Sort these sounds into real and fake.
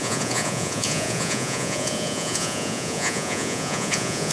fake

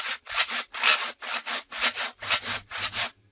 real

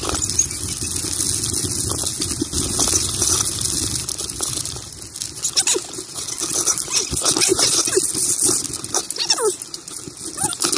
real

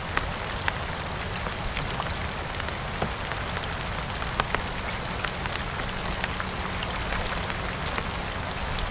real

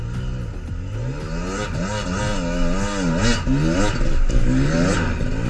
real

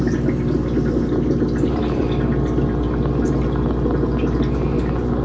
real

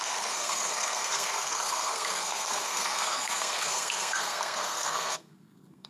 fake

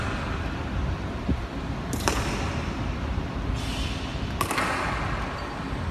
real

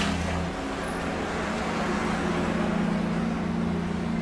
real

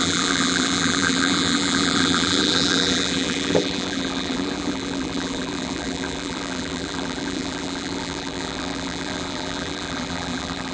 fake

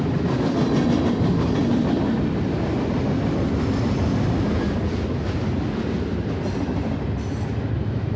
real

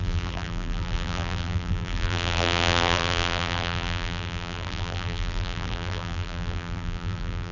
fake